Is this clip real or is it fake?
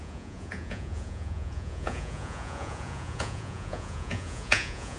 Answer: fake